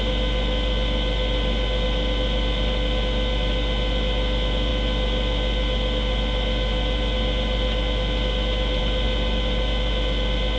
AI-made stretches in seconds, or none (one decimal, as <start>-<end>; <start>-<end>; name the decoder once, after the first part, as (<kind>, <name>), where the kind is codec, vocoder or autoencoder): none